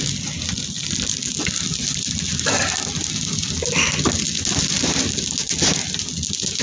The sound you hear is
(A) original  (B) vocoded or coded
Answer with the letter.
A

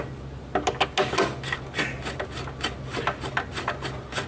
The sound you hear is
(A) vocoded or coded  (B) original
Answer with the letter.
B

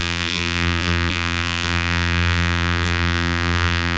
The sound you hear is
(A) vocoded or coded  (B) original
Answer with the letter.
A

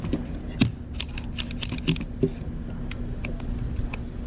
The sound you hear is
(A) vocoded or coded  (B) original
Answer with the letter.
B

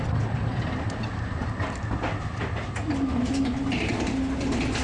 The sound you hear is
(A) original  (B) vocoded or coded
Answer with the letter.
A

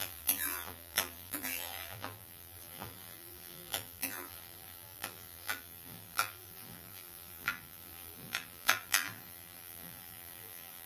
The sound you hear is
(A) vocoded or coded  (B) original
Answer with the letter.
A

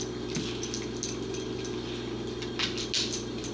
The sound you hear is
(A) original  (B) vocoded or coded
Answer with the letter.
A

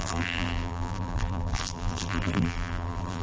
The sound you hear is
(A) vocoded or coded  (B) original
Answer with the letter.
A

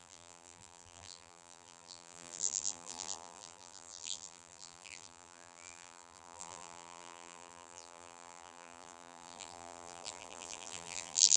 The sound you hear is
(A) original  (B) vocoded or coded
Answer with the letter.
B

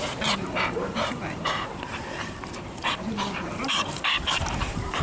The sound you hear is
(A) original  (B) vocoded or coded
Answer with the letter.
B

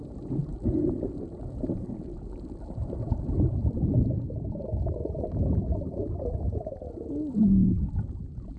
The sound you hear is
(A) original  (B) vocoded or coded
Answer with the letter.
B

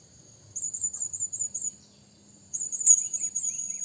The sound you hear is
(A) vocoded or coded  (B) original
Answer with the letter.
A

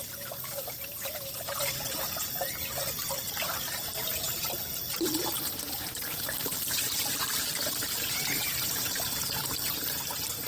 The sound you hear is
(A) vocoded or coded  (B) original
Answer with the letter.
A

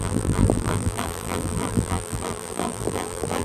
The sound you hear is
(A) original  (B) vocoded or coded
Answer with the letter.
B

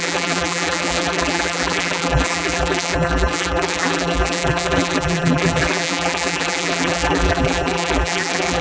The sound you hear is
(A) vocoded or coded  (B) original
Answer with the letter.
A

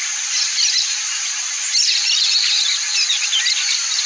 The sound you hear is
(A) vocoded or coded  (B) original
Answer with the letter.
B